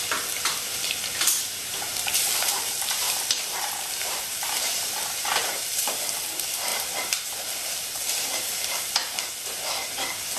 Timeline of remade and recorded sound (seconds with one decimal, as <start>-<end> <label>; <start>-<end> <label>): 0.0-0.7 recorded; 0.7-5.9 remade; 5.9-6.7 recorded; 6.7-9.3 remade; 9.3-10.4 recorded